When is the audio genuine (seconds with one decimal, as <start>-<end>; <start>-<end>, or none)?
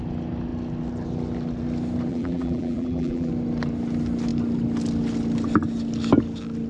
0.0-2.1; 3.3-6.7